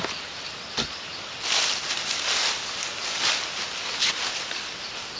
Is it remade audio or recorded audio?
recorded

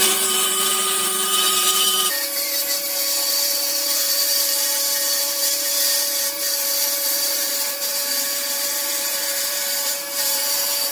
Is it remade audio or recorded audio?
remade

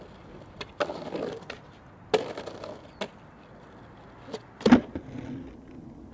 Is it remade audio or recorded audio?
recorded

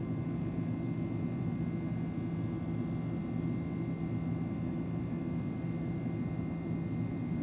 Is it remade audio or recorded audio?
recorded